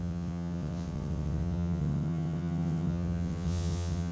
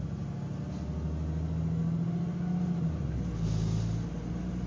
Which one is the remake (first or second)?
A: first